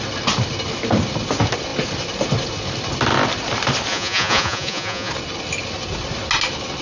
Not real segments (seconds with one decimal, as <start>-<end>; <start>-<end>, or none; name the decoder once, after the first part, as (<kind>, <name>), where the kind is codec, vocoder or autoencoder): 3.9-5.1 (vocoder, Vocos)